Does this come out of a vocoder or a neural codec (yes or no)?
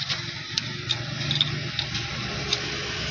no